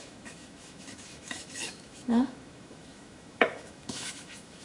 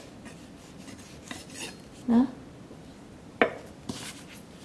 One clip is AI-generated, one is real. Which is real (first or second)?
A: second